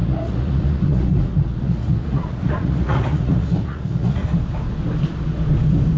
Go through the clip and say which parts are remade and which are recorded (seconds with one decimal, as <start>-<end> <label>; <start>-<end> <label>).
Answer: 0.0-4.2 remade; 4.2-6.0 recorded